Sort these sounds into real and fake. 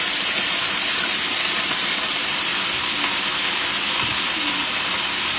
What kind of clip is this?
real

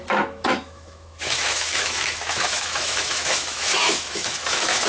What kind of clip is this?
fake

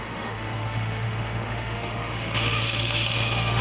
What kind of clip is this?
fake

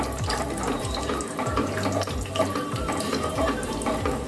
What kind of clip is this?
fake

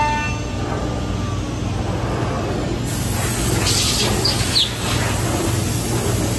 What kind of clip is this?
real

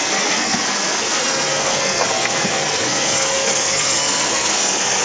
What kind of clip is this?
fake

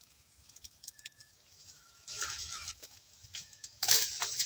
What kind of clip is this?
fake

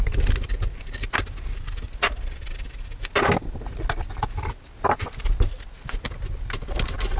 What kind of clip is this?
real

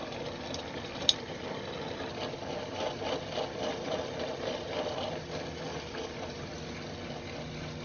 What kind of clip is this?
real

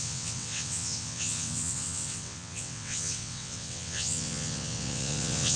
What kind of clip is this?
fake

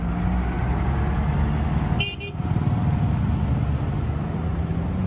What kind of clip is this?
real